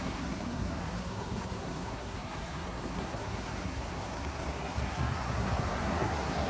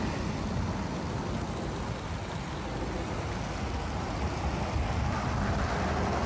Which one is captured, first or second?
second